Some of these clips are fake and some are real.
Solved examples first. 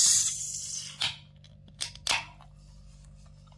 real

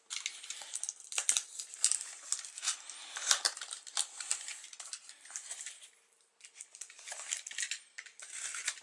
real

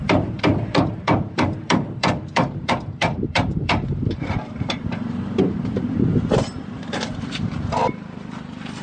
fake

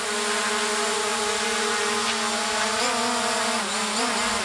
real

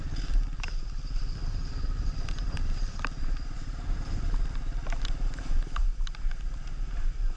fake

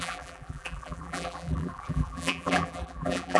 fake